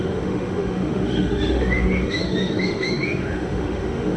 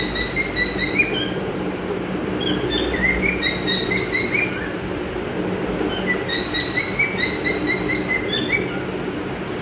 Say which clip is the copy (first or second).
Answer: first